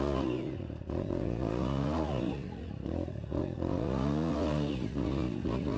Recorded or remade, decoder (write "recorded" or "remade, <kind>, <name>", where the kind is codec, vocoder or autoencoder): remade, vocoder, Vocos